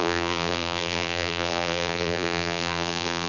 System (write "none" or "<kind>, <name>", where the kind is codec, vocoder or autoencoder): vocoder, BigVGAN v2